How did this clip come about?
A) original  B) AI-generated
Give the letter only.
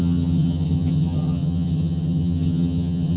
B